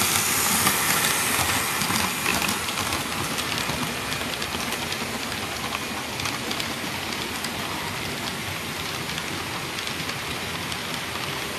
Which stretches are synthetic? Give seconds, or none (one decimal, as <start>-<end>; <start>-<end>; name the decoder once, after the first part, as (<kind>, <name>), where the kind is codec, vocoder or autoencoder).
none